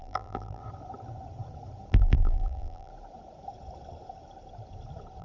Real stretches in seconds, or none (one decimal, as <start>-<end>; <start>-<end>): 0.6-1.9; 2.9-5.2